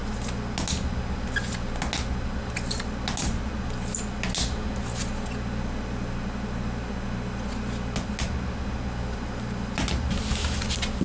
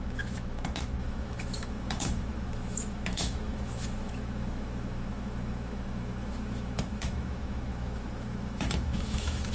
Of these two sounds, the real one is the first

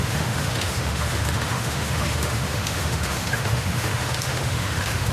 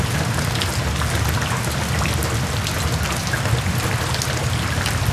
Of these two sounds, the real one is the second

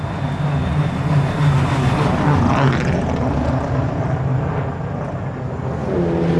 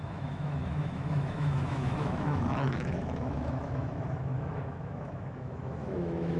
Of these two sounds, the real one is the first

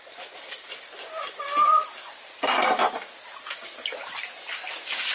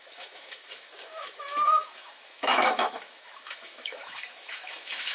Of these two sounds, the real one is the first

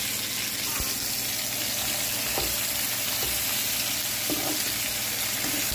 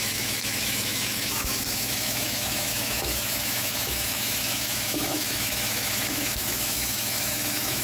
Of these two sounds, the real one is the first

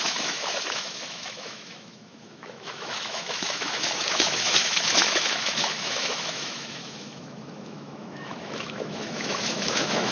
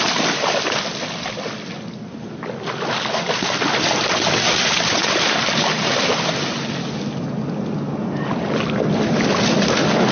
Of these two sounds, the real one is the second